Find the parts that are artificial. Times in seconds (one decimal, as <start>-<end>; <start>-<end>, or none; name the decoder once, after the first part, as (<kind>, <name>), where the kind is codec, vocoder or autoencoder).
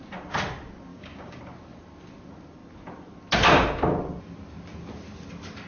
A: 0.9-1.4 (codec, DAC)